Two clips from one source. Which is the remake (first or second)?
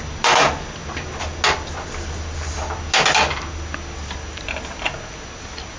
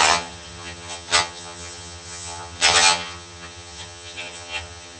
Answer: second